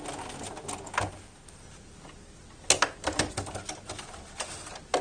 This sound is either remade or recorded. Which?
recorded